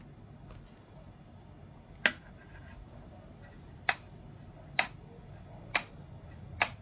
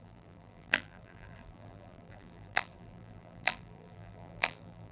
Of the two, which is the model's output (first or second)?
second